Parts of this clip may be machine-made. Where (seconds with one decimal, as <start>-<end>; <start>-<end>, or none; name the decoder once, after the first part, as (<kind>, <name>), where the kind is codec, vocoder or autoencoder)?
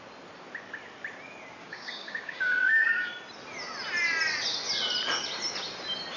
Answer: 1.6-3.1 (codec, DAC)